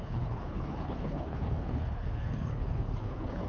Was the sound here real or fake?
fake